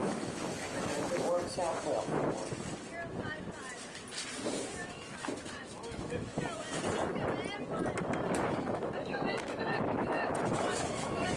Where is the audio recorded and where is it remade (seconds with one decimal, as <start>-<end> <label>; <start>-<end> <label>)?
0.0-2.2 remade; 2.2-4.9 recorded; 4.9-6.3 remade; 6.3-8.3 recorded; 8.3-11.4 remade